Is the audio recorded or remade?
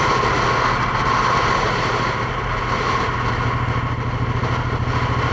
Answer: recorded